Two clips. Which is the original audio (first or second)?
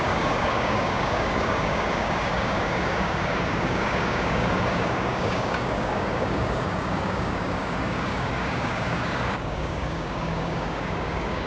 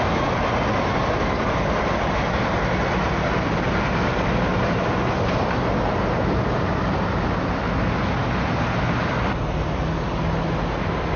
second